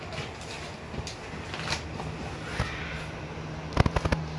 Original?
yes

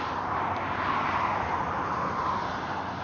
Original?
no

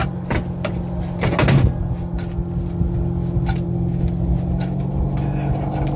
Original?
yes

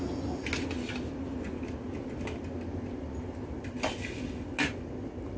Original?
yes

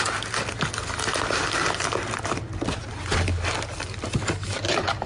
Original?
yes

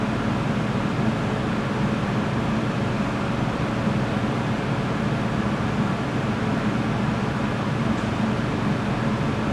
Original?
yes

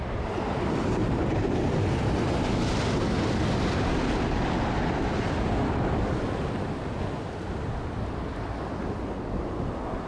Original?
yes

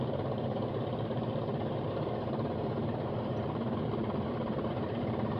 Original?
no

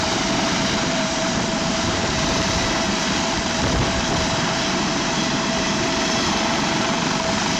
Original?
no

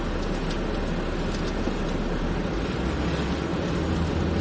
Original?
yes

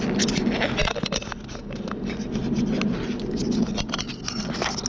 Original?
yes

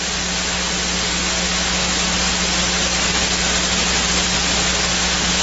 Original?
yes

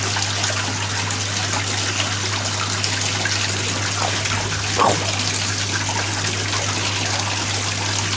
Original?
yes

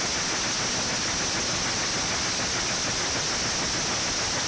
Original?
yes